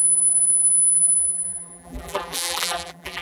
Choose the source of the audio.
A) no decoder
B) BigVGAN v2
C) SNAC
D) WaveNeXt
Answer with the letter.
B